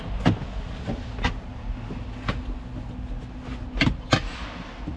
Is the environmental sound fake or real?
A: real